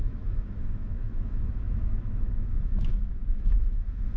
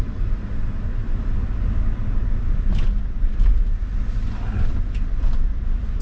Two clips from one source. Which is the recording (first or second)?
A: second